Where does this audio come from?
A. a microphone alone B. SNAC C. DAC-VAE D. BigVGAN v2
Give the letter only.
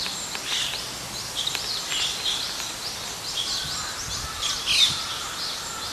A